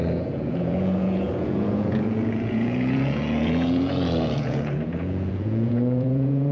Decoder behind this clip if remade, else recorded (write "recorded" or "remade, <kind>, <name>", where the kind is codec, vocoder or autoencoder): remade, vocoder, Vocos